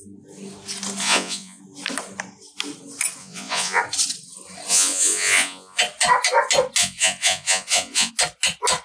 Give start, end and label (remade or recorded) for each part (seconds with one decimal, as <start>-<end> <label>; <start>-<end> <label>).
0.0-1.0 recorded; 1.0-1.6 remade; 1.6-3.2 recorded; 3.2-3.8 remade; 3.8-4.7 recorded; 4.7-5.8 remade; 5.8-6.8 recorded; 6.8-8.1 remade; 8.1-8.8 recorded